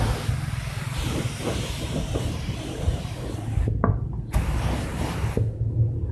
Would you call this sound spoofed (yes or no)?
no